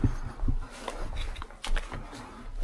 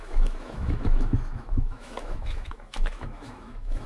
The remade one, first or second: second